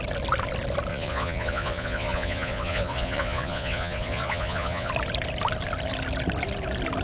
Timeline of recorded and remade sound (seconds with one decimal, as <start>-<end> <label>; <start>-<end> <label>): 0.0-0.9 recorded; 0.9-4.9 remade; 4.9-7.0 recorded